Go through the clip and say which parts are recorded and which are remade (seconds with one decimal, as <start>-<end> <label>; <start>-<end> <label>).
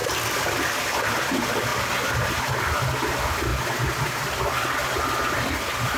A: 0.0-6.0 recorded